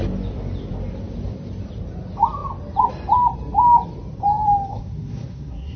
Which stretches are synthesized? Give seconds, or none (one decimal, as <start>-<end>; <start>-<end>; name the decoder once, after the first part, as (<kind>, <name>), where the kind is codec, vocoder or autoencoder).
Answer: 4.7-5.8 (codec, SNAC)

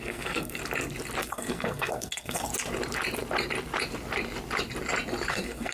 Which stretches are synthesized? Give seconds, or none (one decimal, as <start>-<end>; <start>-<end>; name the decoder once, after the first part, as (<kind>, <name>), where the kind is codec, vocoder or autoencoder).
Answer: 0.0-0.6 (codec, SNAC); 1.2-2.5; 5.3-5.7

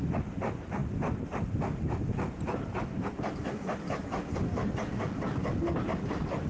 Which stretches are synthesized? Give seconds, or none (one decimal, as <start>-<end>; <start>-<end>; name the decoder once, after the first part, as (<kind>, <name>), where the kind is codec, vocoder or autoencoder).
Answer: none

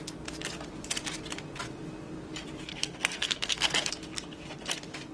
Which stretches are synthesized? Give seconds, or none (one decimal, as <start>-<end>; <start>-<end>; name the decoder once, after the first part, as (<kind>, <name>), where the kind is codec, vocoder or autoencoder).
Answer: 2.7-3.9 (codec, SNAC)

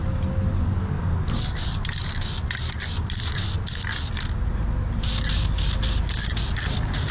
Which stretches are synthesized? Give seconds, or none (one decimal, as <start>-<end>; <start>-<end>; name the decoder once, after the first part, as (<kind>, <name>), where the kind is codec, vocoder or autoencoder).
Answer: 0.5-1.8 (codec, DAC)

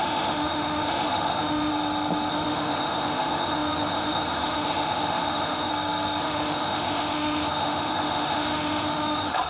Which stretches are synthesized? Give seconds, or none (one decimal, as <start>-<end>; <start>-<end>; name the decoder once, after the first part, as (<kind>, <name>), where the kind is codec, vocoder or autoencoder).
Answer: 0.0-1.7 (autoencoder, DAC-VAE); 2.3-5.7; 6.2-9.5

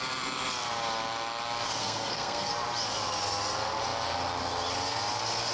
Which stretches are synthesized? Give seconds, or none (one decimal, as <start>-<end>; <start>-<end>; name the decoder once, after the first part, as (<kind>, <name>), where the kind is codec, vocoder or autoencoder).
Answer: 1.8-2.5 (codec, SNAC)

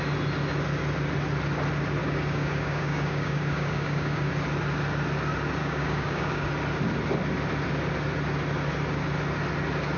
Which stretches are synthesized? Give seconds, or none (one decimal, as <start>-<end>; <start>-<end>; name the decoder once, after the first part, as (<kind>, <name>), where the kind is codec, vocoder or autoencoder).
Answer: 2.0-4.3 (codec, DAC); 5.6-6.5